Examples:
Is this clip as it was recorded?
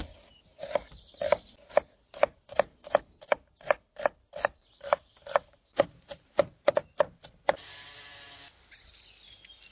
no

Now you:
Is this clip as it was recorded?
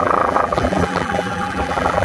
no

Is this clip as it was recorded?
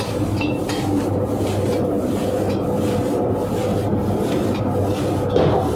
yes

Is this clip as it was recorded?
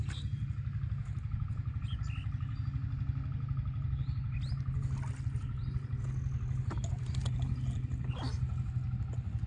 yes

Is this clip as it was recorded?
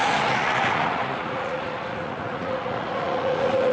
no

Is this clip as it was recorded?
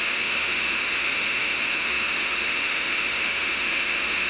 no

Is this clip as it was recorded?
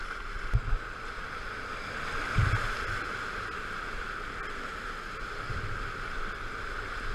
yes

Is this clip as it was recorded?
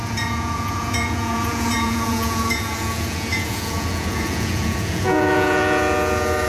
no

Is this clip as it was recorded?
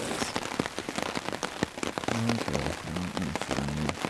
yes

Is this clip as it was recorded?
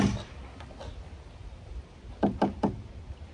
yes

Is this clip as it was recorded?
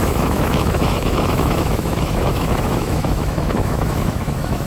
no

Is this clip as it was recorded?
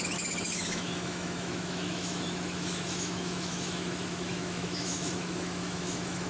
no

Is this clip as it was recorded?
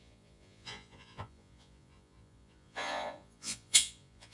no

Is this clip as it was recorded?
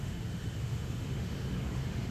no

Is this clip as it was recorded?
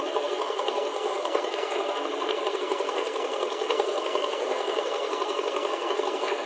no